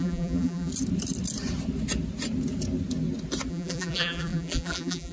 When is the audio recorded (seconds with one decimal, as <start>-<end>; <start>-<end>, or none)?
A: 0.7-3.5